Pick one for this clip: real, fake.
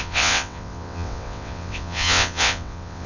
fake